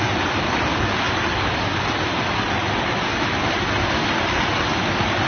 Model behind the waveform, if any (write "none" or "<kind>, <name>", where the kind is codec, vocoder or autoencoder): none